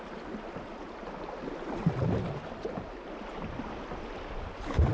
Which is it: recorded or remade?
remade